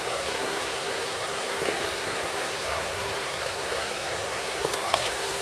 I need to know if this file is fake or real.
fake